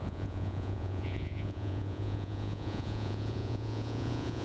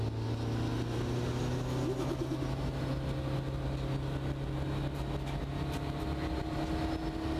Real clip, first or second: second